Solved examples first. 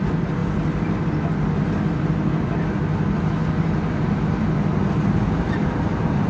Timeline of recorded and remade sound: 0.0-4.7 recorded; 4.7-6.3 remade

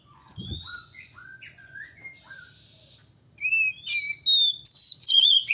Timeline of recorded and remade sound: 0.0-2.0 remade; 2.0-5.0 recorded; 5.0-5.5 remade

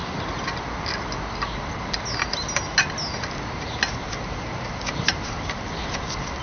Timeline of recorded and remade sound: 0.0-6.4 recorded